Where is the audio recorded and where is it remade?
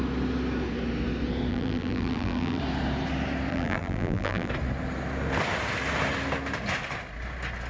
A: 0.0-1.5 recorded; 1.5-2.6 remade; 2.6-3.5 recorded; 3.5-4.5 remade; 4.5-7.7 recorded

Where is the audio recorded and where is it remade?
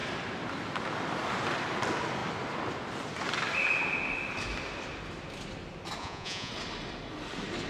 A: 0.0-6.0 recorded; 6.0-6.5 remade; 6.5-7.7 recorded